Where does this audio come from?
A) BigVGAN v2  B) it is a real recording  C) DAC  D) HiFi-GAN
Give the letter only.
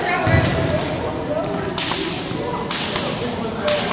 B